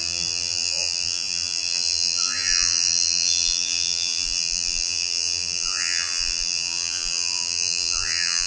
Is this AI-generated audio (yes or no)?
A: yes